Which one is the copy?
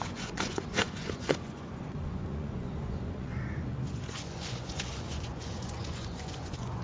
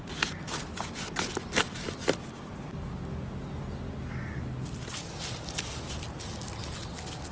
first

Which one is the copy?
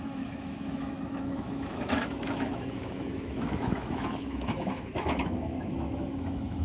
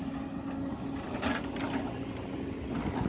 first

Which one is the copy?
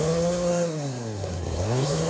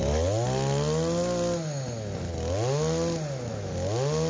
first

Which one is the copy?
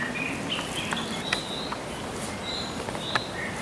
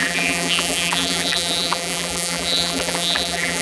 second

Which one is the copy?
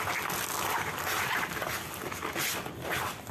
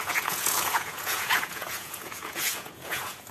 second